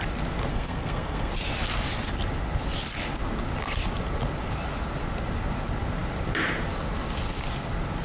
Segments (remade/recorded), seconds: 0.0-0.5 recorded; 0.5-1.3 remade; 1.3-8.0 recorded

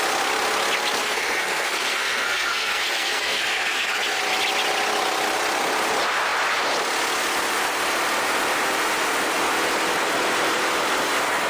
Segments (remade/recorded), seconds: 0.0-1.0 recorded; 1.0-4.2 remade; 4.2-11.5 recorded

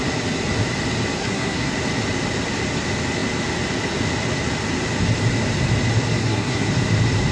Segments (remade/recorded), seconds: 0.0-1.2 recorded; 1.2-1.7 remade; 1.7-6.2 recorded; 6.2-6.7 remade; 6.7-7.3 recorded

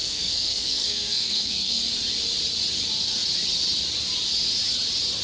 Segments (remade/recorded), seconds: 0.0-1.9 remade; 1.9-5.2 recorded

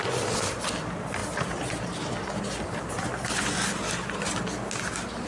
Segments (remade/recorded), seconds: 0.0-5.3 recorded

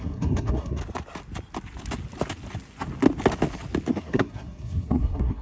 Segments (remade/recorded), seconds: 0.0-0.8 remade; 0.8-3.9 recorded; 3.9-5.4 remade